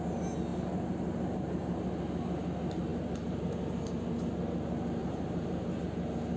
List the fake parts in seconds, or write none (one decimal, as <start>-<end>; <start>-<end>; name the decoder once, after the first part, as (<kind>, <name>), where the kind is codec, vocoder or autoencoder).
0.5-1.9 (vocoder, BigVGAN v2); 2.9-4.1; 5.0-5.7